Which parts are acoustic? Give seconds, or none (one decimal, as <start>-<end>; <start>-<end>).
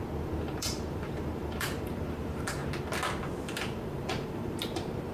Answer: 2.6-3.4